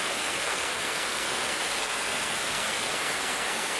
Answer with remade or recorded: remade